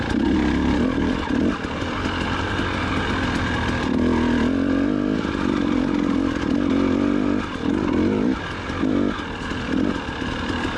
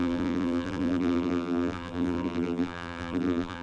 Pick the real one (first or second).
first